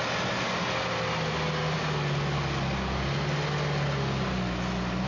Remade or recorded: recorded